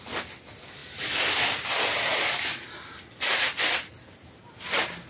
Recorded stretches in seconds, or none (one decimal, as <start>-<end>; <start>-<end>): 0.0-5.1